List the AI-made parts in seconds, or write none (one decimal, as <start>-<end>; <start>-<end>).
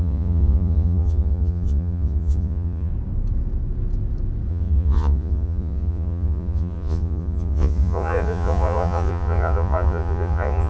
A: 0.0-2.9; 4.5-10.7